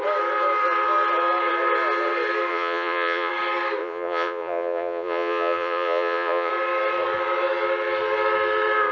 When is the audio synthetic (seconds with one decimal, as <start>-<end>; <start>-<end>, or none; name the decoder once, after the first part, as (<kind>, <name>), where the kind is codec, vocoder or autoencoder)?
2.5-3.3 (vocoder, Vocos); 3.8-6.5